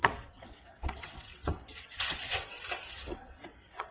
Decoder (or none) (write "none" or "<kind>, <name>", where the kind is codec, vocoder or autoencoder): vocoder, WaveNeXt